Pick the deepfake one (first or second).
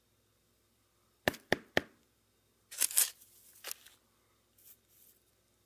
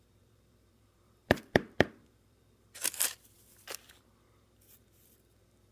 second